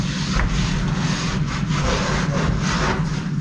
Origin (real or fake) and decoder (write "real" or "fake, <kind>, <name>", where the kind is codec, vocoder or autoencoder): real